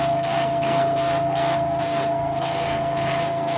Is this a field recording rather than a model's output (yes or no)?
no